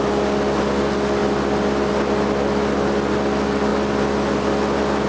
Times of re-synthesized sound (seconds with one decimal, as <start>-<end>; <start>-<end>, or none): none